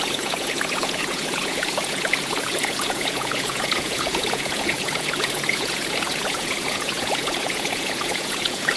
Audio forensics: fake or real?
fake